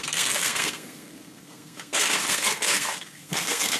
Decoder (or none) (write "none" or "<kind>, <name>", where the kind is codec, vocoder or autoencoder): codec, SNAC